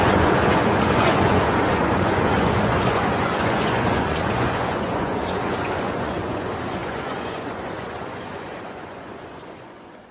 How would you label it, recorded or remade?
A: remade